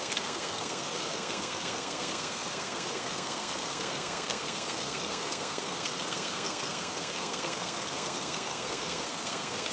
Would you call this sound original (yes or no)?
no